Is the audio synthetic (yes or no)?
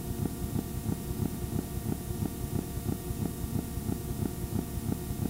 no